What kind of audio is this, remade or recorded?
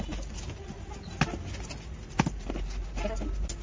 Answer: recorded